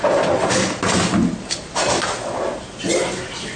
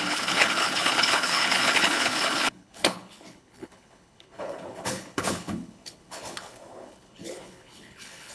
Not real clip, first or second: second